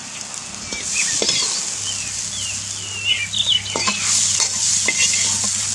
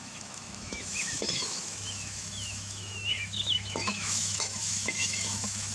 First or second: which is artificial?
second